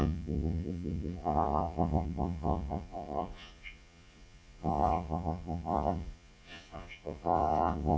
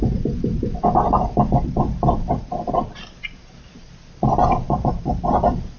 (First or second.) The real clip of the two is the second